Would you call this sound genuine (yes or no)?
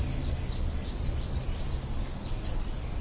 no